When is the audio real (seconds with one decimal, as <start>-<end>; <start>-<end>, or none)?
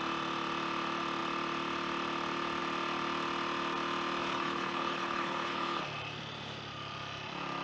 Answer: 0.0-4.2; 5.8-7.6